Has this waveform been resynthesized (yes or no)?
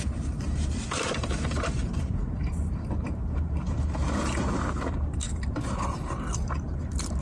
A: yes